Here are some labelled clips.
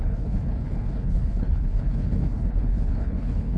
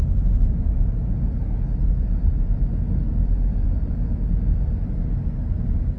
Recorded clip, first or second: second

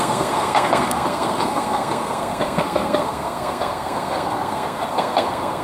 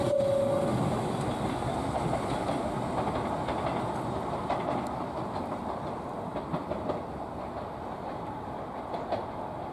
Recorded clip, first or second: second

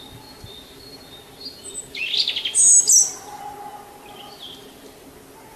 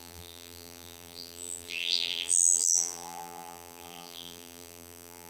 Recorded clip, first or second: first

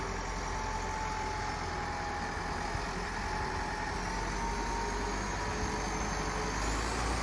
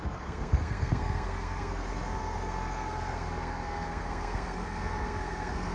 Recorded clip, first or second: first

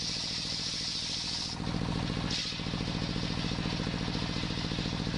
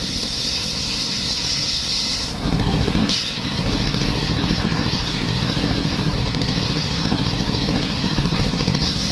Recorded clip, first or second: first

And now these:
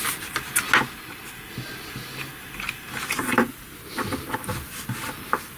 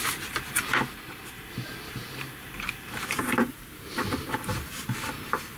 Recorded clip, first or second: first